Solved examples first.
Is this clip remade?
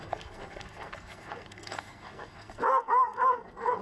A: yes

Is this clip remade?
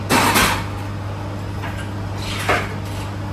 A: no